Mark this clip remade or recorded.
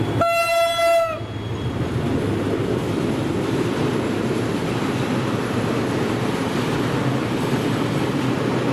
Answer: recorded